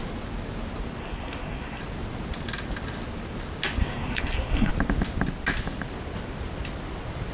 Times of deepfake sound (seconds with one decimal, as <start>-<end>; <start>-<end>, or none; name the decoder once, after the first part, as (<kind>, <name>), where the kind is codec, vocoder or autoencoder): 1.0-1.8 (codec, SNAC); 3.8-4.7